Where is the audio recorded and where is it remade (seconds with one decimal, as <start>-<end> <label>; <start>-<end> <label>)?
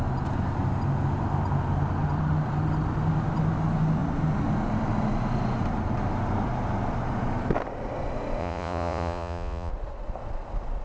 0.0-8.4 recorded; 8.4-9.7 remade; 9.7-10.8 recorded